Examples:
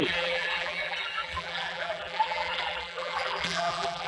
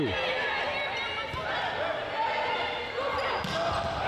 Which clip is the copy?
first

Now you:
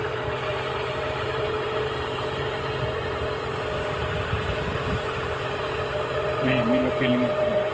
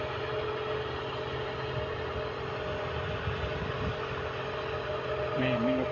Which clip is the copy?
first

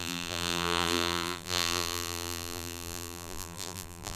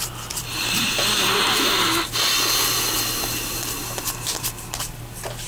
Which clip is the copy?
first